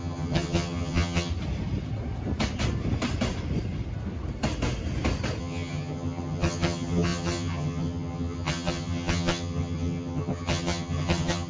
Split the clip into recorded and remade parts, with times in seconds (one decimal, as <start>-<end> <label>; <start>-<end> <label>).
0.0-1.3 remade; 1.3-5.4 recorded; 5.4-11.5 remade